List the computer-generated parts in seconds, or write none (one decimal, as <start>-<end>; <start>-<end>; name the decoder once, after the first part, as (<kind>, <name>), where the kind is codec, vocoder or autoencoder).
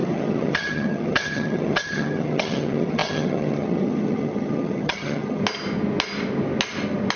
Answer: 0.0-5.4 (vocoder, HiFi-GAN)